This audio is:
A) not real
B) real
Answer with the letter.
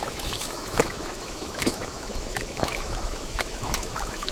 A